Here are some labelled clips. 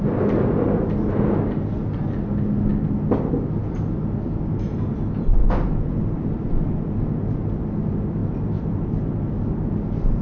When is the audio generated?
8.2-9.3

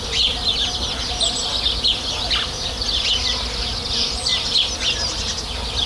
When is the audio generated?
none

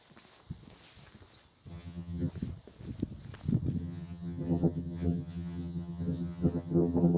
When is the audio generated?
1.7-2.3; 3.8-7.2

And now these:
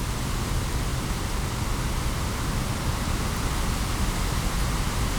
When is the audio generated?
none

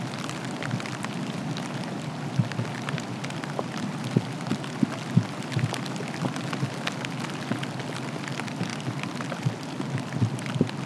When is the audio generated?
none

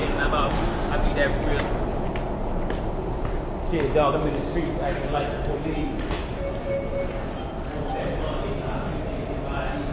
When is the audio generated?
none

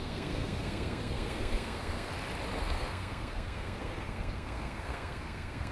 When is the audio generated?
0.0-2.1; 2.6-5.7

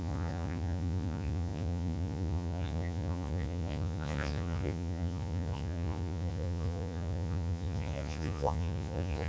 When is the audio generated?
0.0-9.3